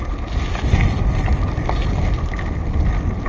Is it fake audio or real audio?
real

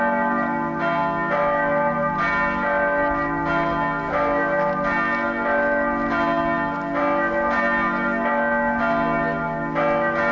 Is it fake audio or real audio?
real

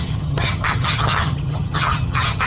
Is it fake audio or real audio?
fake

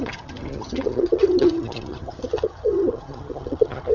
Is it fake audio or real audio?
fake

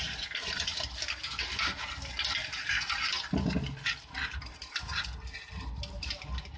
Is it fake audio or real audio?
real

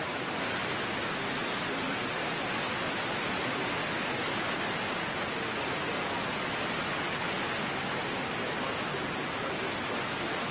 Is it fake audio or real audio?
real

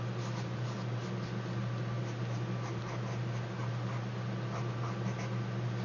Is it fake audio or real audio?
real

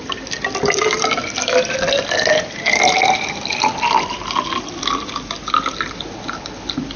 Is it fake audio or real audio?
real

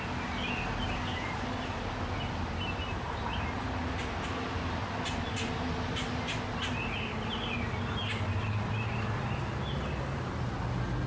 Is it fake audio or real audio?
real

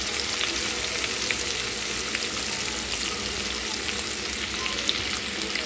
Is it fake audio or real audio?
real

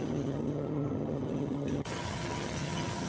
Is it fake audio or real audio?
fake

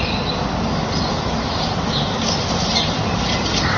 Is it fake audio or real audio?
real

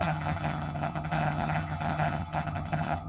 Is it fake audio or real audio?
fake